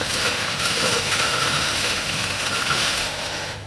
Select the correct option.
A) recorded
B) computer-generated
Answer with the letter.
B